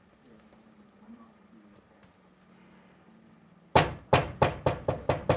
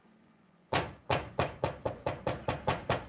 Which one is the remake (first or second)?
second